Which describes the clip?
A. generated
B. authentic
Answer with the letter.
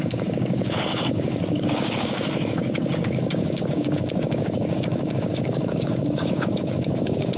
A